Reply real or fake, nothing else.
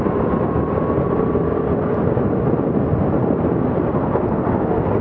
real